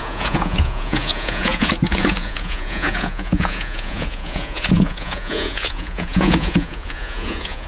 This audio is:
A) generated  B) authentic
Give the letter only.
A